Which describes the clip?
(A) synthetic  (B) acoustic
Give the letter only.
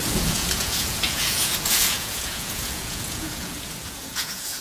A